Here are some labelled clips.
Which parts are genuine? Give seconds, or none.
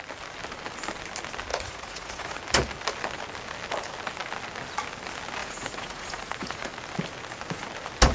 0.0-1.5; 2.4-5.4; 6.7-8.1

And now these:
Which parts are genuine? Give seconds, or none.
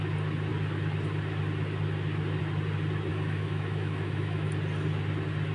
0.0-3.1; 4.5-5.5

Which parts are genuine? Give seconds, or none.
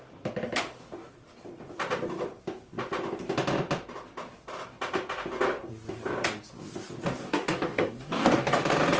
0.0-7.2; 8.6-9.0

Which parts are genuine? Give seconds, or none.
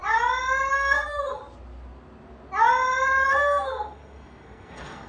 0.0-0.7; 1.4-3.3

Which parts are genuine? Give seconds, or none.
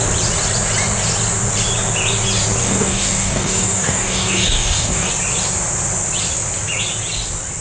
0.0-2.6; 5.1-7.6